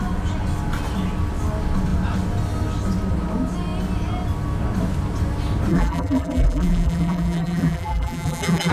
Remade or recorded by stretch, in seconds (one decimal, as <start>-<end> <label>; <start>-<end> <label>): 0.0-5.7 recorded; 5.7-8.7 remade